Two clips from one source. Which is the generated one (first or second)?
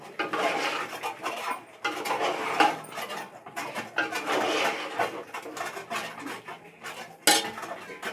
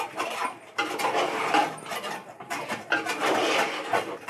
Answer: second